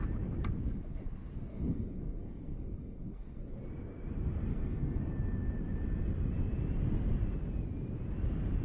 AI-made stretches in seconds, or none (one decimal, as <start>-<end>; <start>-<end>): 1.5-3.4; 4.5-5.0